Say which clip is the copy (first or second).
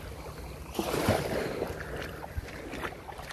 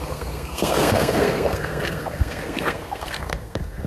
second